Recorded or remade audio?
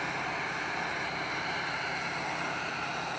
recorded